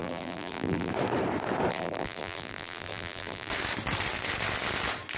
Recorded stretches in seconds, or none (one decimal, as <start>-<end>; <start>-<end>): 0.9-1.7; 3.5-5.2

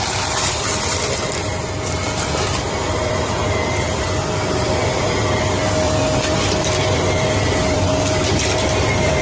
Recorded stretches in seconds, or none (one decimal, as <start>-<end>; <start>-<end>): 1.5-2.5

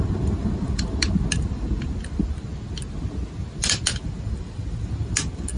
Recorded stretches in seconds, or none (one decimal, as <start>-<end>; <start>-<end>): 2.5-3.6